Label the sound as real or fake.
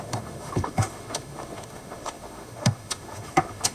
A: fake